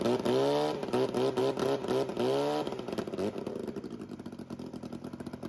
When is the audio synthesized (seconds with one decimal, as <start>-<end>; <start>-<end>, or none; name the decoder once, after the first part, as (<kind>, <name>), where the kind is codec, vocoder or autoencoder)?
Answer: none